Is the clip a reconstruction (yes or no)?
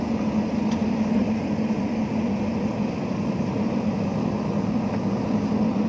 no